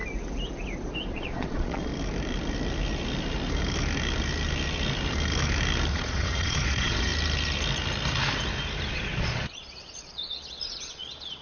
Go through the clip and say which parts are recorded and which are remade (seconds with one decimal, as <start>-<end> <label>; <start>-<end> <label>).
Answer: 0.0-1.1 recorded; 1.1-1.9 remade; 1.9-5.9 recorded; 5.9-7.1 remade; 7.1-8.9 recorded; 8.9-11.4 remade